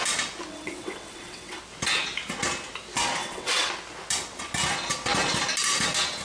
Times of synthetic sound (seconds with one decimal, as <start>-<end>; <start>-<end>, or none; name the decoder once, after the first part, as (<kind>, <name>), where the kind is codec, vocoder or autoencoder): 0.5-1.6 (vocoder, WaveNeXt); 3.2-3.7